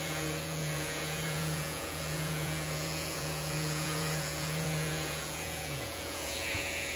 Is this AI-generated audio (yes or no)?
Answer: yes